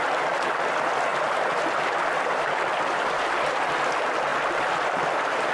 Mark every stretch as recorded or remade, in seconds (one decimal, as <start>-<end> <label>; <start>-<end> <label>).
0.0-4.3 recorded; 4.3-5.5 remade